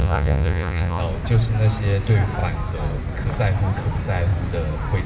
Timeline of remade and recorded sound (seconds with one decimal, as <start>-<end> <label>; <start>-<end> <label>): 0.0-1.0 remade; 1.0-5.1 recorded